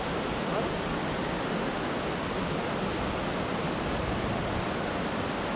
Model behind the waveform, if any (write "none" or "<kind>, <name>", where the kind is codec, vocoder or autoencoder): none